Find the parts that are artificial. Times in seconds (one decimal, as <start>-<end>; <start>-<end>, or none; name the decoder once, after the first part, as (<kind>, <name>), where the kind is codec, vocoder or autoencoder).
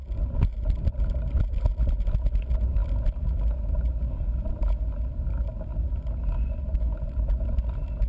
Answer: none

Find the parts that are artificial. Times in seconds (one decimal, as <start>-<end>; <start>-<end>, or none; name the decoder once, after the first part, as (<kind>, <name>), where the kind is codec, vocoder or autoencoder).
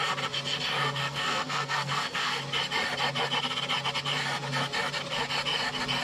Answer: 0.8-2.4 (codec, SNAC)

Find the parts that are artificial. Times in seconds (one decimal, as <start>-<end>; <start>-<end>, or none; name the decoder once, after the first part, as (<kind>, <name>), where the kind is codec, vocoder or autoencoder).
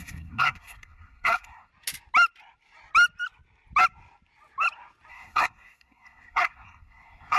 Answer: 0.0-1.7 (codec, SNAC); 5.1-7.4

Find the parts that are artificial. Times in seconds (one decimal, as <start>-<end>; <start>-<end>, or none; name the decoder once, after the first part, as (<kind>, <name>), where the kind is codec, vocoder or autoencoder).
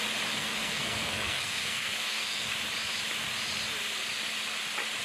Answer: 0.4-2.5 (codec, SNAC)